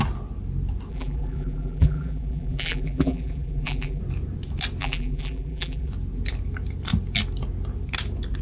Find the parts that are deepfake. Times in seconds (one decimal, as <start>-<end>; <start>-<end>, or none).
0.9-4.0; 4.8-5.9